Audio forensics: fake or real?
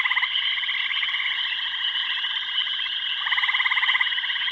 real